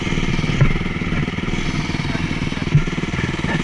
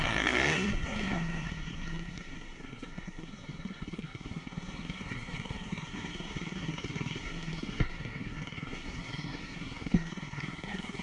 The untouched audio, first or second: first